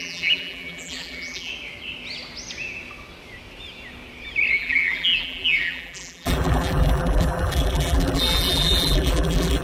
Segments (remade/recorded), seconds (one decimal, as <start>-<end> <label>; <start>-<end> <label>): 0.0-1.5 remade; 1.5-4.5 recorded; 4.5-9.6 remade